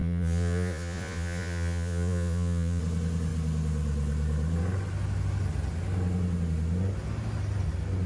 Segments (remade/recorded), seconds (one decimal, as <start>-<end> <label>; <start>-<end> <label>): 0.0-2.8 remade; 2.8-8.1 recorded